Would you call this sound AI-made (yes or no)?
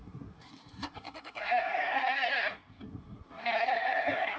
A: yes